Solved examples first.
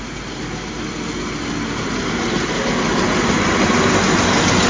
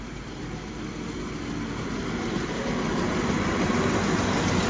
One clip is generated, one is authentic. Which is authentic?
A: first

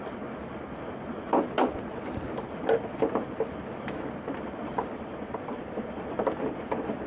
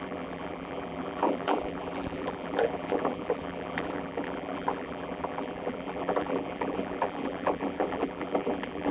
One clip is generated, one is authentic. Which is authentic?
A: first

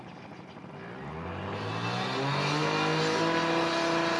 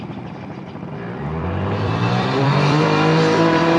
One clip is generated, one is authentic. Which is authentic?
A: first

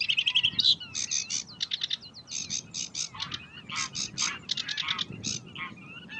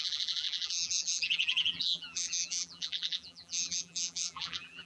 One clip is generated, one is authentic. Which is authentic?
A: first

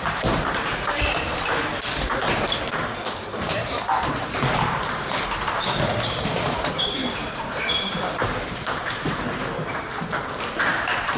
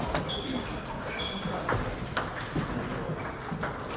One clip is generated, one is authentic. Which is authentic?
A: second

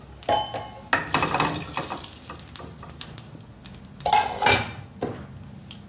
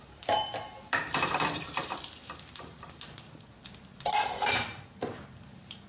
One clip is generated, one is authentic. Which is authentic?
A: first